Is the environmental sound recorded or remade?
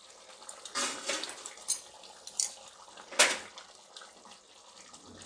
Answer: recorded